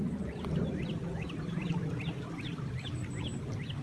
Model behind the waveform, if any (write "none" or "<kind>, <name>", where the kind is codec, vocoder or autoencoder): none